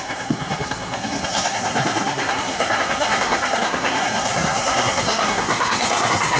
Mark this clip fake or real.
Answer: fake